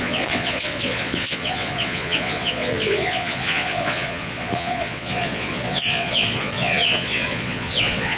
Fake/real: fake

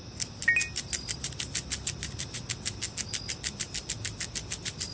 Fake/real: real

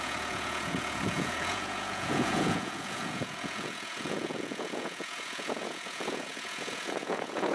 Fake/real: fake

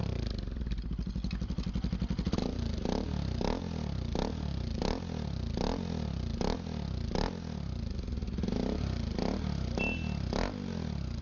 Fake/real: real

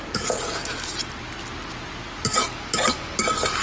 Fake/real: real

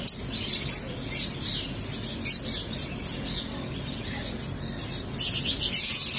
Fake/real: real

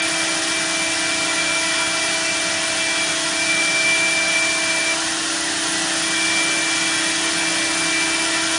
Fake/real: real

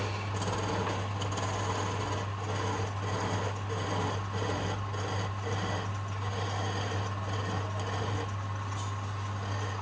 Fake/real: real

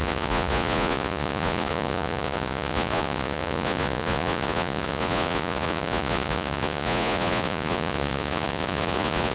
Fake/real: fake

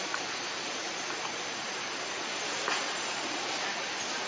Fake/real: real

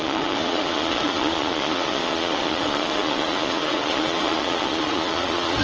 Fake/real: fake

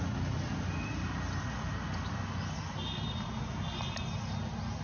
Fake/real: real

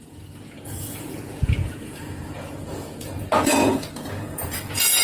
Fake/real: fake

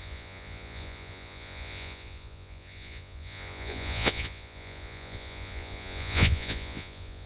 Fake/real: fake